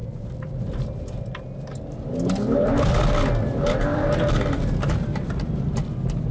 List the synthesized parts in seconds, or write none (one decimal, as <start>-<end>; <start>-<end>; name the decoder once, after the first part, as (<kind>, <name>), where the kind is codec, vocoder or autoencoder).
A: none